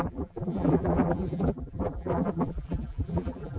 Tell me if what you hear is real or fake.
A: fake